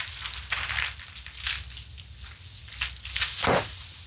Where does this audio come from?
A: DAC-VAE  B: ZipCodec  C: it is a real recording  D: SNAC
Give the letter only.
C